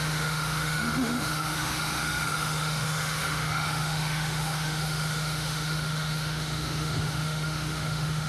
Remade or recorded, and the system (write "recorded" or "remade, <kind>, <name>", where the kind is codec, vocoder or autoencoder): remade, autoencoder, DAC-VAE